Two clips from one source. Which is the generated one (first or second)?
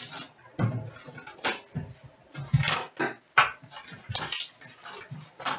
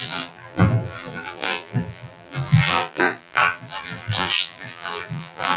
second